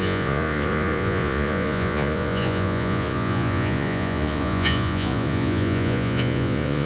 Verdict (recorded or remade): remade